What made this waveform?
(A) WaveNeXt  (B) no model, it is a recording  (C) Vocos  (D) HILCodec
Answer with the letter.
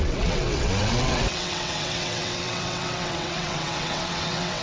A